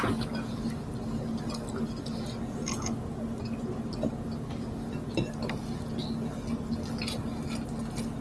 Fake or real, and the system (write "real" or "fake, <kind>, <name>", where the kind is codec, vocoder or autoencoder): real